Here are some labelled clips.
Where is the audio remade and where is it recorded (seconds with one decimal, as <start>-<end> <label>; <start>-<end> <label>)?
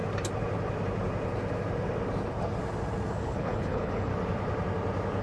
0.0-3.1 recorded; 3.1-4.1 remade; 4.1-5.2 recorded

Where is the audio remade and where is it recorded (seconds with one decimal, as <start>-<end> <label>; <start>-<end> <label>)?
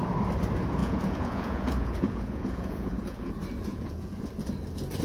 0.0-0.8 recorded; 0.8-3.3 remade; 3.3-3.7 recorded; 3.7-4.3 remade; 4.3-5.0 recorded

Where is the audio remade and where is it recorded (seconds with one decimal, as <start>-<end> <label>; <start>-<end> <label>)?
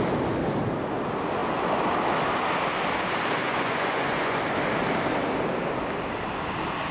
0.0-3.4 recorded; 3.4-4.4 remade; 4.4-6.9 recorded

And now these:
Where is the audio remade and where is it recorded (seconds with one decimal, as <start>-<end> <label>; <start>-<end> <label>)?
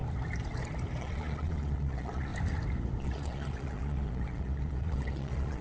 0.0-1.0 recorded; 1.0-2.3 remade; 2.3-3.0 recorded; 3.0-5.6 remade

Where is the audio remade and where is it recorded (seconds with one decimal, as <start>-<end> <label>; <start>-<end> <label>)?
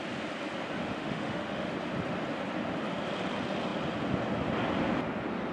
0.0-0.8 recorded; 0.8-1.7 remade; 1.7-5.5 recorded